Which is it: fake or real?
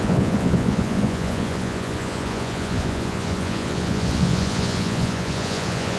fake